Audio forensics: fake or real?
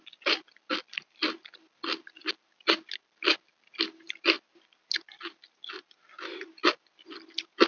real